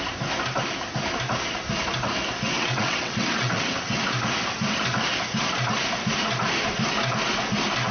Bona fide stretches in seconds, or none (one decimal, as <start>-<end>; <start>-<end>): 0.0-2.5; 4.0-7.9